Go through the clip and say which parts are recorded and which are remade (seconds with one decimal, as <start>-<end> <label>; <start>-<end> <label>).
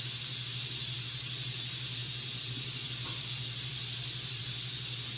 0.0-2.0 recorded; 2.0-3.3 remade; 3.3-5.2 recorded